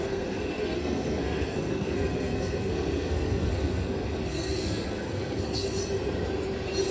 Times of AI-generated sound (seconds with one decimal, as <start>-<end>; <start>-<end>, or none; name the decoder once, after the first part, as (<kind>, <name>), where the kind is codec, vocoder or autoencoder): 0.0-5.8 (codec, SNAC)